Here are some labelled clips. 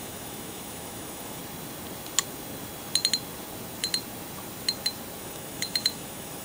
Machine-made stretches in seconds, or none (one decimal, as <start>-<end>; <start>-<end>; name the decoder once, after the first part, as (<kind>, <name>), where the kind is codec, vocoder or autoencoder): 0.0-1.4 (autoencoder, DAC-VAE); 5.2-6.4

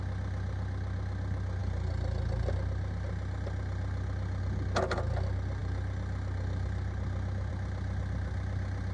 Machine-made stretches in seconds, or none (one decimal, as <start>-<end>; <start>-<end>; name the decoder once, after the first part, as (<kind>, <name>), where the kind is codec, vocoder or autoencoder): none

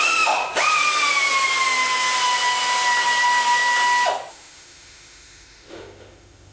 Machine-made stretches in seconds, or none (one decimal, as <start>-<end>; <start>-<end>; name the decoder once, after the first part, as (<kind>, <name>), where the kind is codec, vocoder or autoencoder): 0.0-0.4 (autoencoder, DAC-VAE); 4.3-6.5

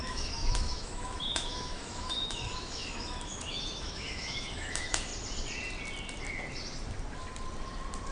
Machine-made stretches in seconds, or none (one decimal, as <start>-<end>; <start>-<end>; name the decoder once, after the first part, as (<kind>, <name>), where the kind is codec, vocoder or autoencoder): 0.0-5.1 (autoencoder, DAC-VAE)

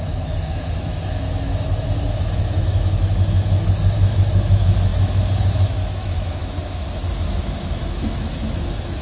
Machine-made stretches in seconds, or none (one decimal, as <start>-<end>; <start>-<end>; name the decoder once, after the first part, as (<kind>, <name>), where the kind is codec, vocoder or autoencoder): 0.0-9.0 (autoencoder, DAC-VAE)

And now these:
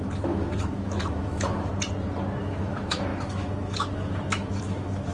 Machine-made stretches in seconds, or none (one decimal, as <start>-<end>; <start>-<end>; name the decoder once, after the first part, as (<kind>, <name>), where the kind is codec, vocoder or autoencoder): 0.0-1.7 (autoencoder, DAC-VAE); 2.4-5.1

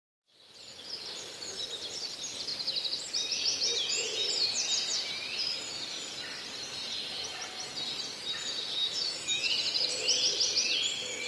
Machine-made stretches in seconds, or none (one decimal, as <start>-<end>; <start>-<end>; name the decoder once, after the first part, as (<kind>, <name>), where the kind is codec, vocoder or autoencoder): 8.8-9.5 (autoencoder, DAC-VAE)